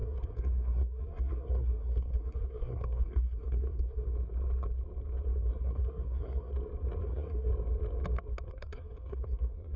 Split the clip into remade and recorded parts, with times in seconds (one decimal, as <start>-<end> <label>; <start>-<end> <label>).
0.0-4.1 remade; 4.1-5.5 recorded; 5.5-6.5 remade; 6.5-7.0 recorded; 7.0-7.5 remade; 7.5-8.5 recorded; 8.5-9.8 remade